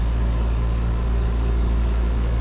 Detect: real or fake fake